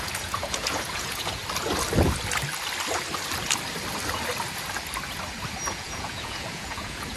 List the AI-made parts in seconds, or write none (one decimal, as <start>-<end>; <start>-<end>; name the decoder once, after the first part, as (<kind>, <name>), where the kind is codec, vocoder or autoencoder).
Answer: 0.0-1.4 (vocoder, Vocos); 5.7-7.2